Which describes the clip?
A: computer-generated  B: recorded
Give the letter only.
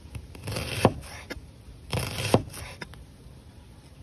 B